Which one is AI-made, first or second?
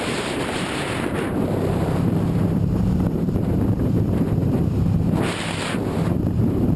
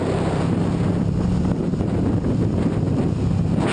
first